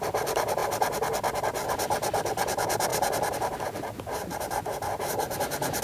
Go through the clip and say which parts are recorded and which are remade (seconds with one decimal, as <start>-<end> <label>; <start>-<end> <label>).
0.0-2.9 recorded; 2.9-5.8 remade